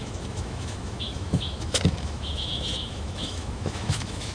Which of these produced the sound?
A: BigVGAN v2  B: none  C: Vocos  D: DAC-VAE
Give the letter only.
D